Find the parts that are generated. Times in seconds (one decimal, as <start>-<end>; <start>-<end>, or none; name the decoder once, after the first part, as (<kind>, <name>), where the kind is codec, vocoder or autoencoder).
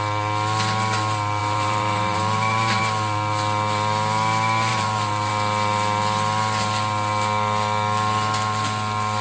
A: 1.4-2.8 (vocoder, BigVGAN v2); 4.7-5.3